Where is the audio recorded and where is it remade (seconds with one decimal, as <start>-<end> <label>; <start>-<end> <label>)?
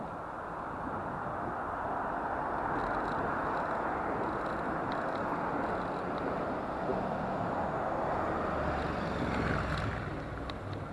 0.0-10.9 recorded